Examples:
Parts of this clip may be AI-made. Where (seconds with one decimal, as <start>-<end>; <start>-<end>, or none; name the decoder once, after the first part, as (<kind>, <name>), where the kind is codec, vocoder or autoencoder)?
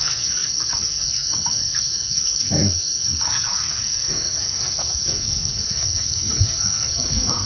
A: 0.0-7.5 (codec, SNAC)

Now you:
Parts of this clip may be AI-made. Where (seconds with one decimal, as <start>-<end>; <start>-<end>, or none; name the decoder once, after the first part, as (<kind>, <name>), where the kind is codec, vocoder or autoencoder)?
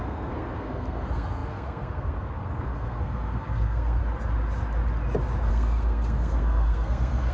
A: 0.0-4.0 (codec, SNAC); 5.5-7.3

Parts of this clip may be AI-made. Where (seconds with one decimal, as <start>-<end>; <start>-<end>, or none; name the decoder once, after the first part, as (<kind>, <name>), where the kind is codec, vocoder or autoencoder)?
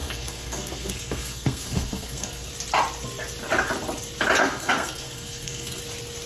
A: 0.0-2.5 (codec, SNAC); 4.4-5.8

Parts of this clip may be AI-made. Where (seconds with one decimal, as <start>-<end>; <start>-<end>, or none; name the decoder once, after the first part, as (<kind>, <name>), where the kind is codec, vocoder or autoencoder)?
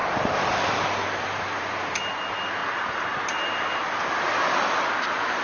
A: none